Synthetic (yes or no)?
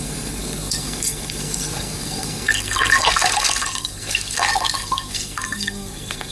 yes